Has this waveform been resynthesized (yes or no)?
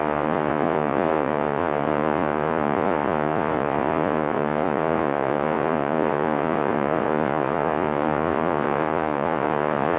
yes